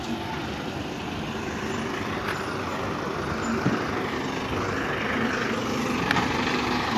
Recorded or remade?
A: recorded